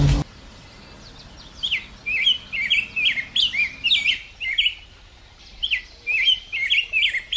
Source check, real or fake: real